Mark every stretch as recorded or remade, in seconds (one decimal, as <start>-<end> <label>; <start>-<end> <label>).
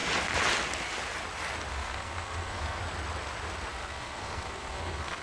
0.0-1.7 recorded; 1.7-2.8 remade; 2.8-3.7 recorded; 3.7-5.2 remade